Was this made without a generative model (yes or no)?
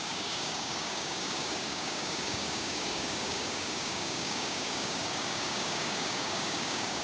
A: no